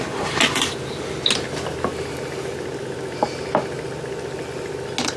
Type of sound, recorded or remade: recorded